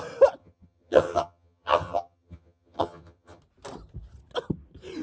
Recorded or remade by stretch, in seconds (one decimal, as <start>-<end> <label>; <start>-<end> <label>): 0.0-0.4 recorded; 0.4-3.4 remade; 3.4-5.0 recorded